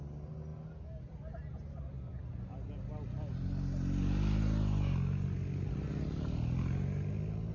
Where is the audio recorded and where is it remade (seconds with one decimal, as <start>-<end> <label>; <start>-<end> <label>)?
0.0-7.5 recorded